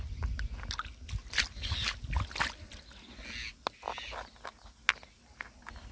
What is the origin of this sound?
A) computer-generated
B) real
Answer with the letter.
B